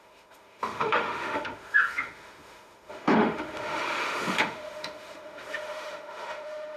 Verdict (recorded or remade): remade